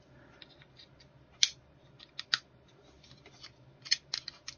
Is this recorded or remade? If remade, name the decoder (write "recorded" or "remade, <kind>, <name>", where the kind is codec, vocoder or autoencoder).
recorded